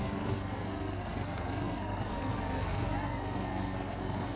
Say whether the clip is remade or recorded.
remade